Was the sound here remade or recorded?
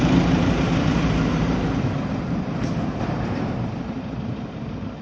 remade